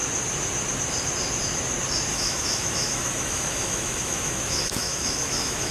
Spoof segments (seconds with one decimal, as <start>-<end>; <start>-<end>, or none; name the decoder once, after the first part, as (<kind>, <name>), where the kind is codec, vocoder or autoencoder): 2.1-5.7 (autoencoder, DAC-VAE)